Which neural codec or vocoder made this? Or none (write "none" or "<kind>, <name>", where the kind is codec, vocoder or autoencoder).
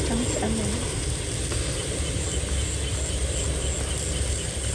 none